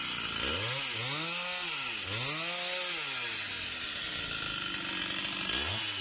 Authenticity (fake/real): real